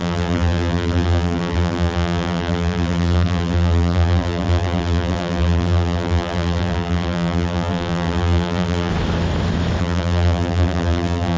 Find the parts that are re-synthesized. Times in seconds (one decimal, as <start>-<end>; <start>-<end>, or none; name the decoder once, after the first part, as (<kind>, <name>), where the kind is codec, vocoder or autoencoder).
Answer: 0.0-8.9 (vocoder, BigVGAN v2); 9.8-11.4